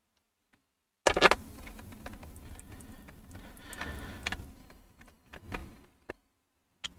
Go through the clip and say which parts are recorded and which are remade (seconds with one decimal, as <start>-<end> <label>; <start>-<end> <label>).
0.0-5.6 recorded; 5.6-6.1 remade; 6.1-7.0 recorded